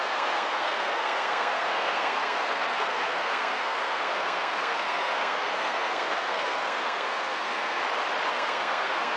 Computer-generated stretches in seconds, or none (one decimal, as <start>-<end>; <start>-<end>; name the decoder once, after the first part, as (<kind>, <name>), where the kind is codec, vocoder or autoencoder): 0.0-7.8 (codec, SNAC); 8.3-9.2